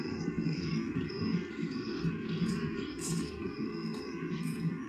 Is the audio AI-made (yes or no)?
yes